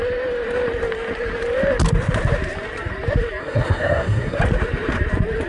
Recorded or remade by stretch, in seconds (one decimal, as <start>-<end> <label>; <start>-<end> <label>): 0.0-3.4 recorded; 3.4-4.4 remade; 4.4-5.5 recorded